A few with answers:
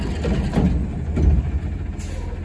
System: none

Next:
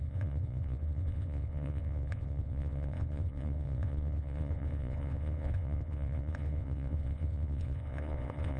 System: vocoder, Vocos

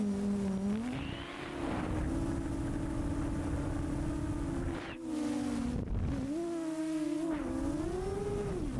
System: vocoder, BigVGAN v2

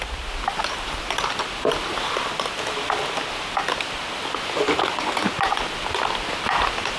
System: none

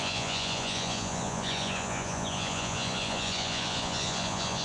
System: vocoder, Vocos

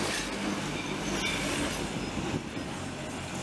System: none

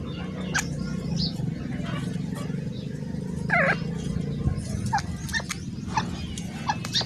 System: none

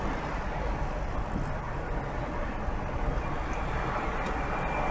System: none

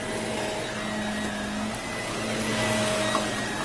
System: none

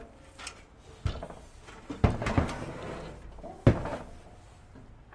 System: none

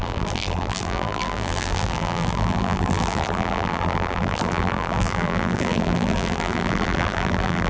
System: vocoder, BigVGAN v2